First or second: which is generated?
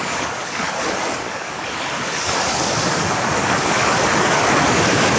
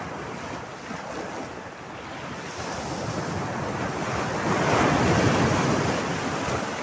first